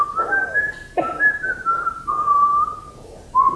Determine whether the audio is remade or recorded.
recorded